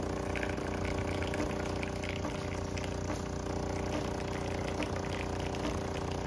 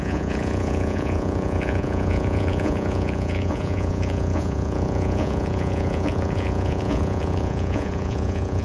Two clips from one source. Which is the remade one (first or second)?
second